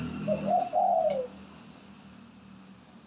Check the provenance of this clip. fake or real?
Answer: real